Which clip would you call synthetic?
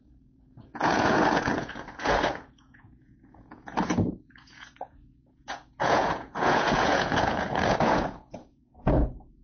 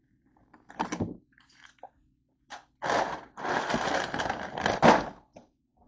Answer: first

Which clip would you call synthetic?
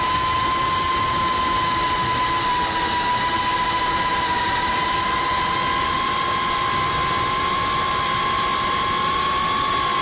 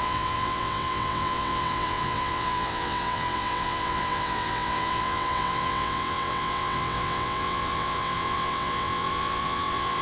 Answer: second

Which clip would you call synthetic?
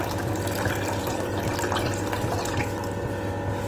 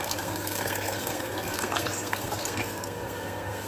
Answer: second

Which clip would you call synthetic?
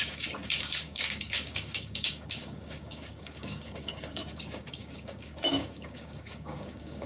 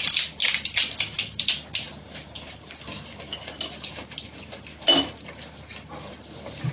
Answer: first